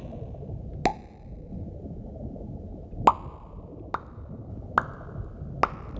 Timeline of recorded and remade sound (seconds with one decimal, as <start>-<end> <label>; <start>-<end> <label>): 0.0-6.0 recorded

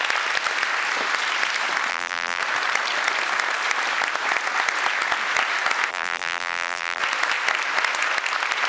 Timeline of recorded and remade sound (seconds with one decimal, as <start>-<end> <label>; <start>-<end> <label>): 0.0-1.9 recorded; 1.9-2.4 remade; 2.4-5.9 recorded; 5.9-7.0 remade; 7.0-8.7 recorded

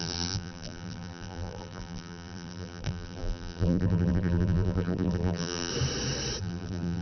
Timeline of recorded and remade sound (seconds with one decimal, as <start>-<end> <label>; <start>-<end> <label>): 0.0-5.7 remade; 5.7-6.4 recorded; 6.4-7.0 remade

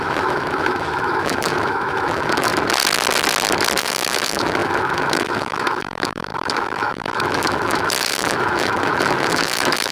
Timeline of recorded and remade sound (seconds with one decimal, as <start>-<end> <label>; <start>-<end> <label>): 0.0-2.5 remade; 2.5-3.8 recorded; 3.8-9.9 remade

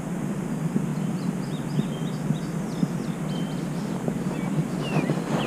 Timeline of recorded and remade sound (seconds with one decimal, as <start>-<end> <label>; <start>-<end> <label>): 0.0-5.5 recorded

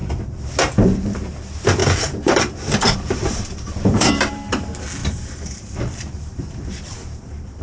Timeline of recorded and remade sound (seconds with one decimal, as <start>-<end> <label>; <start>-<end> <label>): 0.0-1.8 recorded; 1.8-4.1 remade; 4.1-5.0 recorded; 5.0-7.6 remade